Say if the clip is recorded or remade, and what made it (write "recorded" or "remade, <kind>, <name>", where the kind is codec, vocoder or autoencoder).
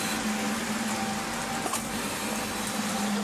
recorded